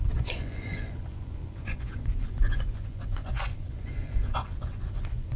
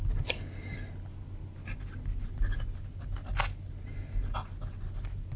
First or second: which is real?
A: second